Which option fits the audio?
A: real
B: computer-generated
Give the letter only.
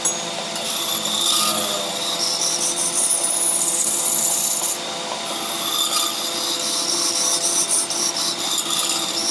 A